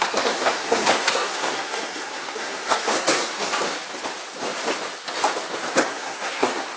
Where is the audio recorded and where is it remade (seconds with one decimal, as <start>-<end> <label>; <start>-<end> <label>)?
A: 0.0-3.5 remade; 3.5-5.7 recorded; 5.7-6.8 remade